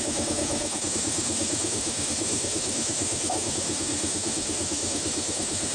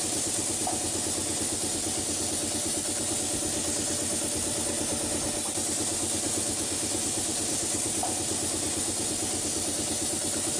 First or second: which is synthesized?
first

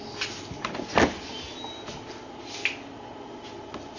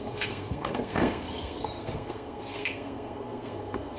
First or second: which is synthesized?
second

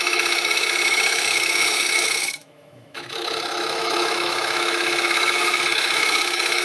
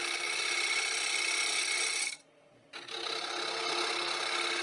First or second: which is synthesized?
first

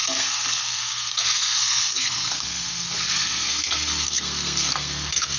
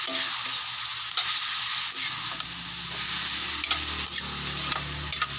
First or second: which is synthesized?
first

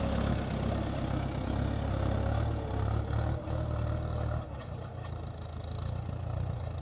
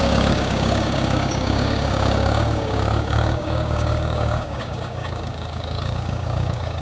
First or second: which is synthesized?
second